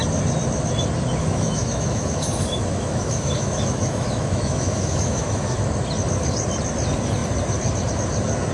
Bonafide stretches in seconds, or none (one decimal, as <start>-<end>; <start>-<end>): 0.0-1.2; 5.7-8.5